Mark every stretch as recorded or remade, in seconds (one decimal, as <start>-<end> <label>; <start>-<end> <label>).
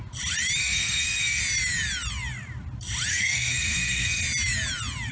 0.0-0.6 recorded; 0.6-1.4 remade; 1.4-3.1 recorded; 3.1-4.2 remade; 4.2-5.1 recorded